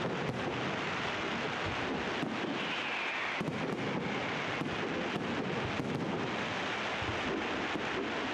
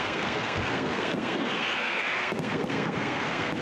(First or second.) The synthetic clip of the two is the second